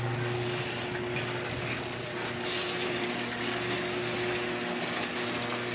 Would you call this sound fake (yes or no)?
no